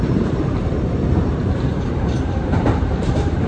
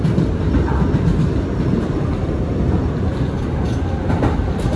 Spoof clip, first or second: first